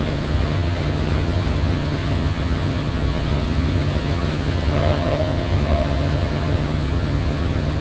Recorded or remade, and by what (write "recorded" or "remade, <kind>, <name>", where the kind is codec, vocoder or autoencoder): remade, vocoder, HiFi-GAN